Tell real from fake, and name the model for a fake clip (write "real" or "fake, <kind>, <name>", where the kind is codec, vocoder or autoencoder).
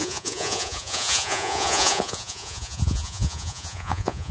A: fake, vocoder, Vocos